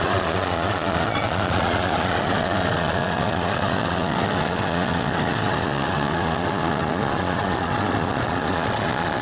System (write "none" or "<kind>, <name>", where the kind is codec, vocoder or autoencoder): vocoder, Vocos